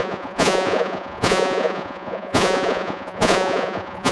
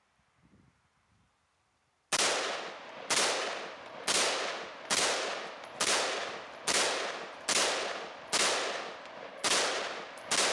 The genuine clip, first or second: second